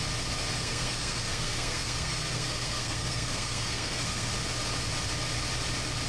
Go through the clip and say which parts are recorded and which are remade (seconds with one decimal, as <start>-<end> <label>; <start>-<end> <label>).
0.0-0.6 recorded; 0.6-4.3 remade; 4.3-6.1 recorded